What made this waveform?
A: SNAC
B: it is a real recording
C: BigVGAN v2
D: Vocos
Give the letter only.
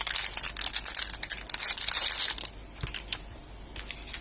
B